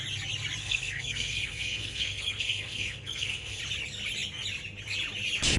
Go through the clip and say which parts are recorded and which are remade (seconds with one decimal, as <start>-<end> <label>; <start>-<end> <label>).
0.0-0.6 recorded; 0.6-3.6 remade; 3.6-5.6 recorded